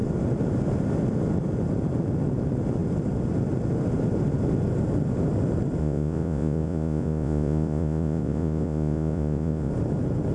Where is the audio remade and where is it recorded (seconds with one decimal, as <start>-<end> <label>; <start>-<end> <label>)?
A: 0.0-5.8 recorded; 5.8-9.7 remade; 9.7-10.3 recorded